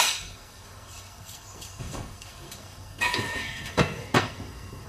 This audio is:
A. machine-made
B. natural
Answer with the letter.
A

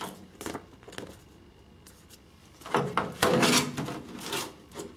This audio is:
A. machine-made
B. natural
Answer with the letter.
B